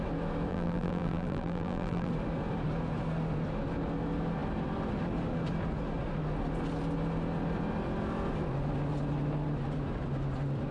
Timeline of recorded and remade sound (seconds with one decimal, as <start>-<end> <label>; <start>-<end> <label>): 0.0-0.5 recorded; 0.5-2.1 remade; 2.1-10.7 recorded